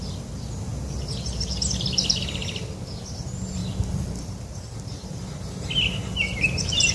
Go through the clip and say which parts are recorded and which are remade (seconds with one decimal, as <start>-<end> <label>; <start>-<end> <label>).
0.0-6.9 recorded